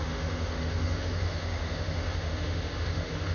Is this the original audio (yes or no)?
no